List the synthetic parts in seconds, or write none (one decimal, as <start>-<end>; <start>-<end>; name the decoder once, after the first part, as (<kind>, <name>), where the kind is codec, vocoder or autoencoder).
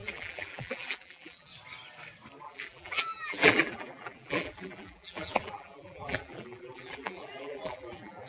0.0-1.5 (vocoder, BigVGAN v2); 2.4-8.3